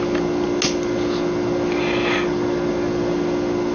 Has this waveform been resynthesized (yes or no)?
no